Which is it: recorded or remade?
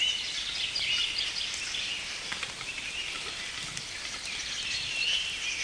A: recorded